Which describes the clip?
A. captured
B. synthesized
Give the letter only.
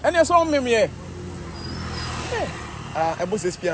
A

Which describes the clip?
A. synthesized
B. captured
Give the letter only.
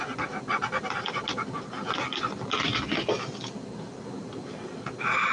B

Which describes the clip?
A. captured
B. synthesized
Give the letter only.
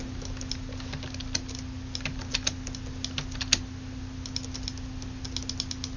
A